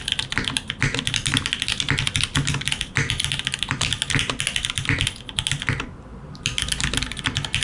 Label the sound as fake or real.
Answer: real